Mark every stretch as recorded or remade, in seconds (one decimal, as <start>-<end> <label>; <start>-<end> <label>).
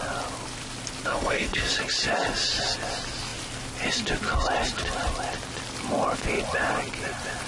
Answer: 0.0-1.1 recorded; 1.1-1.7 remade; 1.7-7.5 recorded